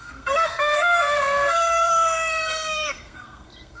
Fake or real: fake